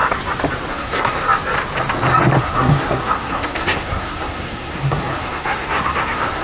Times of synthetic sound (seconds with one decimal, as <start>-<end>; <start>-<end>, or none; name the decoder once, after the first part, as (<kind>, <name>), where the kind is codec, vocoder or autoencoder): 0.7-1.2 (codec, SNAC); 2.4-6.4